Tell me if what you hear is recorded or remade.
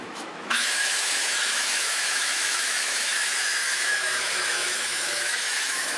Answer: remade